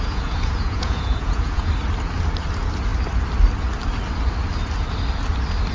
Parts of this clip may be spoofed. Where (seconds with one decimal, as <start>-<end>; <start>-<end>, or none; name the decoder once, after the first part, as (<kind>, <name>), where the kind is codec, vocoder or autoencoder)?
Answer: 0.0-1.7 (vocoder, Vocos)